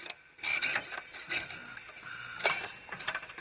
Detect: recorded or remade recorded